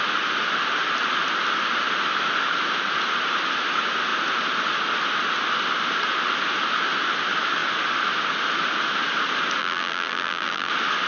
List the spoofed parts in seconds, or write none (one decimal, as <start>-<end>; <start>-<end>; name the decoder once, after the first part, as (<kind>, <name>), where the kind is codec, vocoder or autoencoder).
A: 9.6-10.7 (vocoder, BigVGAN v2)